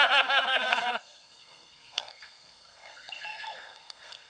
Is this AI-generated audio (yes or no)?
yes